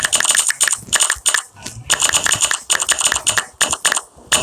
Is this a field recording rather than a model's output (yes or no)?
yes